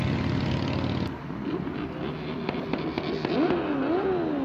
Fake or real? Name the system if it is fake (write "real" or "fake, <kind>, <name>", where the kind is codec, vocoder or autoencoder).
real